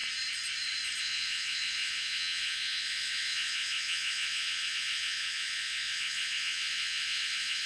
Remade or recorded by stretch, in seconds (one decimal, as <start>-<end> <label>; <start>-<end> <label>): 0.0-1.0 recorded; 1.0-7.7 remade